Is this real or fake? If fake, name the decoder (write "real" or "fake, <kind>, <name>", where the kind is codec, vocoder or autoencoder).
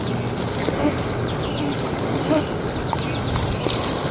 real